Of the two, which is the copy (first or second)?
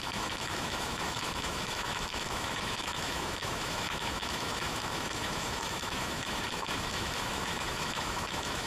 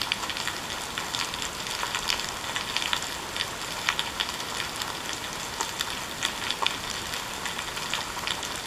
first